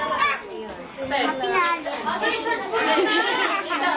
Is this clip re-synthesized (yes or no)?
no